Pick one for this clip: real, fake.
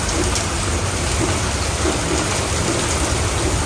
real